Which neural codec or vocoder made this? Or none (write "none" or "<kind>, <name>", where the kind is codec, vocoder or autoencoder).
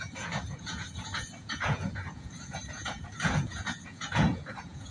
vocoder, Vocos